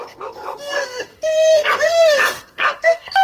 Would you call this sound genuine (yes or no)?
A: no